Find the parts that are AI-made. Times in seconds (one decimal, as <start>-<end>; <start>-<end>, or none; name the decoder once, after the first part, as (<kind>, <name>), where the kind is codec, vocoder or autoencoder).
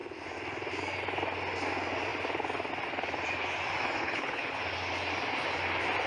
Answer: 4.0-4.6 (codec, HILCodec)